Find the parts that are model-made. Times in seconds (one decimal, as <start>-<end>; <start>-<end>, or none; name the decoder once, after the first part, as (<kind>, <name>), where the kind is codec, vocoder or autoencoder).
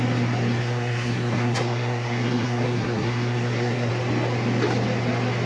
0.6-3.9 (codec, SNAC)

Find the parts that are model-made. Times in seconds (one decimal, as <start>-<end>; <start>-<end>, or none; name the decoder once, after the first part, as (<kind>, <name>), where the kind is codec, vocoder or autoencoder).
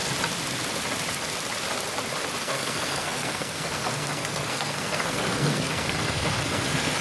2.4-7.0 (codec, SNAC)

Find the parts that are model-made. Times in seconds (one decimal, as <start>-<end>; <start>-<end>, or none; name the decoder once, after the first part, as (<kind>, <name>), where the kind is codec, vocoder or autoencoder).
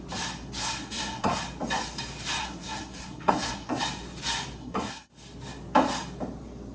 0.6-1.4 (codec, SNAC); 2.4-3.8; 4.6-5.1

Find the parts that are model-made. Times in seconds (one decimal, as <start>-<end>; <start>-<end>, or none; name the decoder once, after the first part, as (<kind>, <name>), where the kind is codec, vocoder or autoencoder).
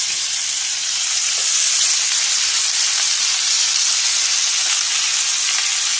none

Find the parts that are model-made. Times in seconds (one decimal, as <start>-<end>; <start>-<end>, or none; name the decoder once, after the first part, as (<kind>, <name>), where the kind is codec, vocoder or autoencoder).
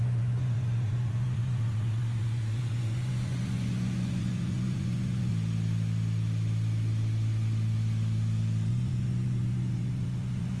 0.0-5.3 (vocoder, Vocos); 8.7-10.6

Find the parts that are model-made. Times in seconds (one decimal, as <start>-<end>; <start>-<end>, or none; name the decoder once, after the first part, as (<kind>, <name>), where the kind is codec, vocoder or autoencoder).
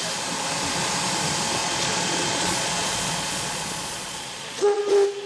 1.6-4.8 (vocoder, Vocos)